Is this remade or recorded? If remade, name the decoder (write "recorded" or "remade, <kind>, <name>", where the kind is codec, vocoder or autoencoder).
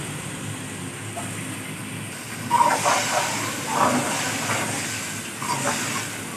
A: recorded